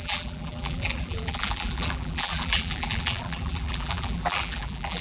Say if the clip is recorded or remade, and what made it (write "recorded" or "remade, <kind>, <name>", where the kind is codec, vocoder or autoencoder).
remade, vocoder, BigVGAN v2